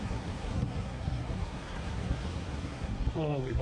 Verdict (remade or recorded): remade